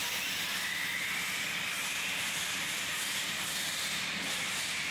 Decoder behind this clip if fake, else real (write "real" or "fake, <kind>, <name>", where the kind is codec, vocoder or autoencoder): real